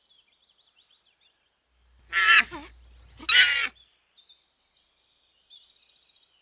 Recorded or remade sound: recorded